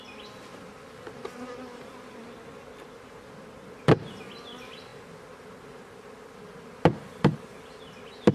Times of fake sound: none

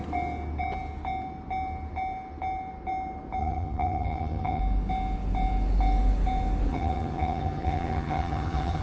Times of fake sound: 3.4-4.6 (vocoder, HiFi-GAN); 6.7-8.8

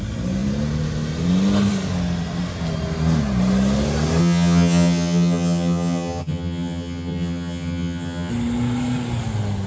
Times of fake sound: 4.2-8.3 (vocoder, HiFi-GAN)

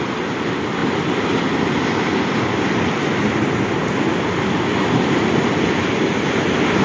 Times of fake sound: none